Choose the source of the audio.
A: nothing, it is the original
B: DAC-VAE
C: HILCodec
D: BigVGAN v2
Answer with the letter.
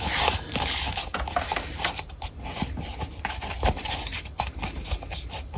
A